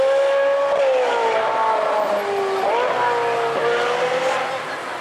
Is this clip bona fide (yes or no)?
yes